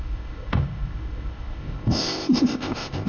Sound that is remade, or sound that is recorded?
remade